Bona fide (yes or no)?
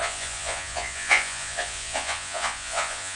no